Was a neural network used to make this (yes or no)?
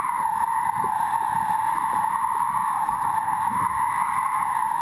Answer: no